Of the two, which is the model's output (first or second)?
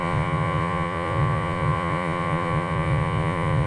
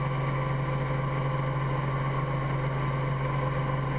first